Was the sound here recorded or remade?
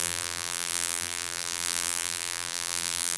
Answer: remade